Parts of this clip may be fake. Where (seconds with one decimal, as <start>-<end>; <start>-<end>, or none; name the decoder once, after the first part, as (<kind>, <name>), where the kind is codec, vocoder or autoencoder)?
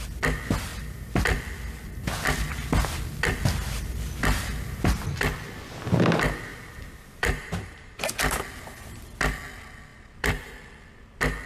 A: 6.5-8.0 (vocoder, BigVGAN v2); 9.9-10.5